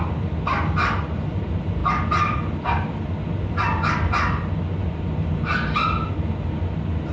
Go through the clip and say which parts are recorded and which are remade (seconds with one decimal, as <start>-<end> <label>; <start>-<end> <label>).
0.0-7.1 recorded